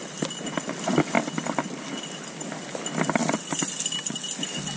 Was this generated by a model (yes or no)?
no